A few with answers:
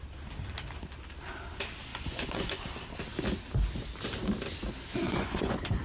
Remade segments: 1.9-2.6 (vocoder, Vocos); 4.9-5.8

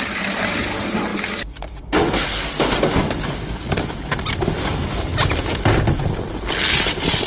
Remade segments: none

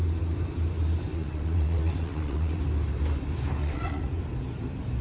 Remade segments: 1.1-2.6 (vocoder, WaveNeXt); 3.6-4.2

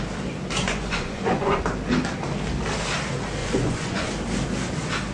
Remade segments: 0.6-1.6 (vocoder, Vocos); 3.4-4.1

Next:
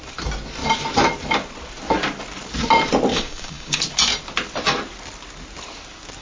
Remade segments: 3.1-3.8 (codec, DAC)

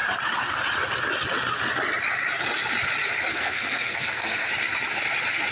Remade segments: 3.3-4.5 (codec, SNAC)

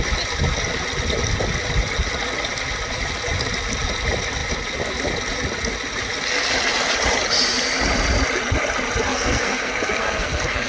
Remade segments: 9.1-10.7 (codec, SNAC)

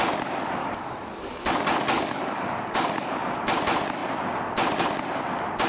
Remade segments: 0.6-3.1 (codec, DAC)